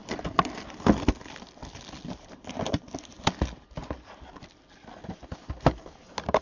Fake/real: real